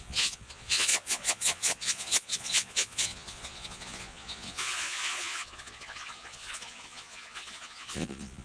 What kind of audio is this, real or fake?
fake